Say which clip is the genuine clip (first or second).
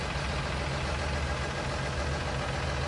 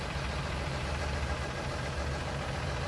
first